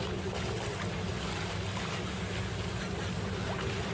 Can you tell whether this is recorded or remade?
recorded